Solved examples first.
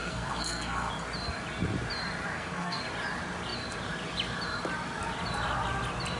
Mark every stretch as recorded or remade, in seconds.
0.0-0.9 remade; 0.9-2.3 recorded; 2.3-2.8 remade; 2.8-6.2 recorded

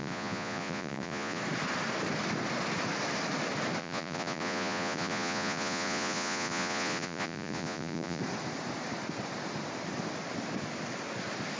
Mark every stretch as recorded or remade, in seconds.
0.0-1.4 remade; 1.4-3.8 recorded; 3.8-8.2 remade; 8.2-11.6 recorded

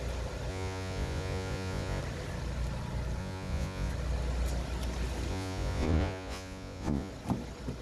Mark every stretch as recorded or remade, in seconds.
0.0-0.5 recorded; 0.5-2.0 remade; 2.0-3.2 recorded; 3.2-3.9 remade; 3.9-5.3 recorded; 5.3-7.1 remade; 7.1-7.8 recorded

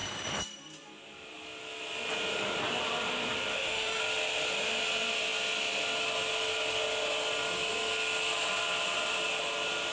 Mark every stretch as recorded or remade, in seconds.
0.0-3.5 recorded; 3.5-4.0 remade; 4.0-9.9 recorded

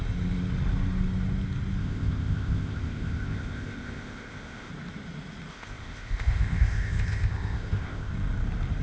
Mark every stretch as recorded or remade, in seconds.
0.0-1.8 recorded; 1.8-4.7 remade; 4.7-5.5 recorded; 5.5-8.1 remade; 8.1-8.8 recorded